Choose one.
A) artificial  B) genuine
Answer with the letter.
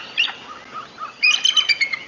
B